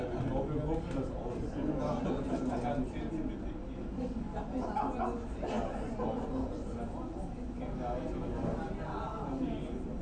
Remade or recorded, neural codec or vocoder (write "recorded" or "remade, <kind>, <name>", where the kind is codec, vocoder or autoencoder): recorded